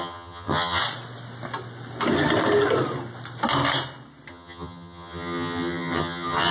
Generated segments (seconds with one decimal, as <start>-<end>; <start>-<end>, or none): 0.0-0.8; 4.3-6.5